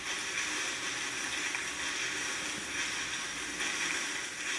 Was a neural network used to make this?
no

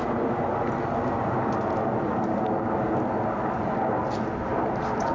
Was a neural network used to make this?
no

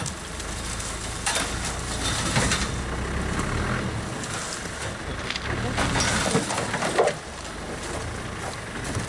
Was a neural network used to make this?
no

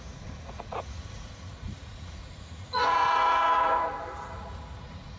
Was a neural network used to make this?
yes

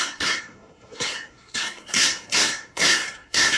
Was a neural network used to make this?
yes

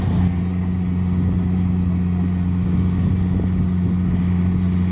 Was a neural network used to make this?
no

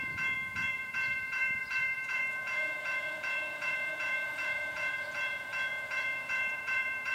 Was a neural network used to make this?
yes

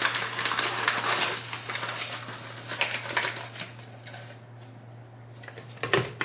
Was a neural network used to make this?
no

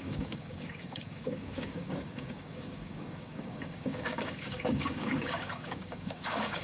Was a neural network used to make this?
yes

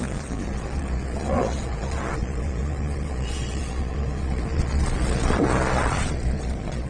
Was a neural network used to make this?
yes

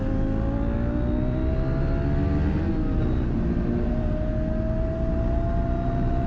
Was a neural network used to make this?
no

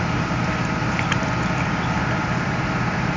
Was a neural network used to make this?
yes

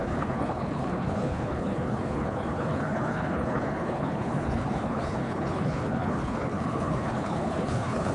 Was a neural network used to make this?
yes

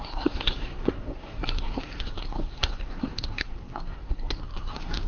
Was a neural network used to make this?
yes